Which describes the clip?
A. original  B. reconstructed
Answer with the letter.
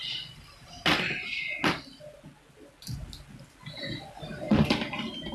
A